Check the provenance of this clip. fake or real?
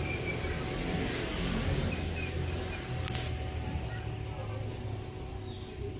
real